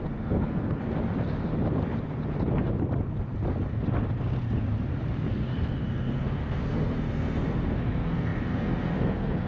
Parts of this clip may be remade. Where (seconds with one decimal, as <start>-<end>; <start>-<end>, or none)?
0.0-0.8; 5.3-9.5